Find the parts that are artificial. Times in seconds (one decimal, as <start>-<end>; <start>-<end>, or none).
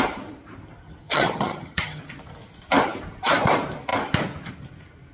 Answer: 1.0-2.0